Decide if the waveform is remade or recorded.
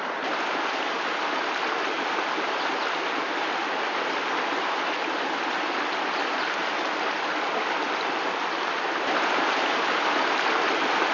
recorded